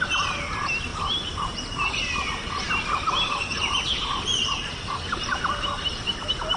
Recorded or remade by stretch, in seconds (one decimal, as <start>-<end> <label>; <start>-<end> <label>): 0.0-6.6 recorded